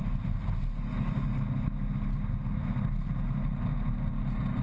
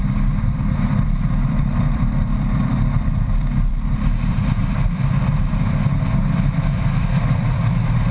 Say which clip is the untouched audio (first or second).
first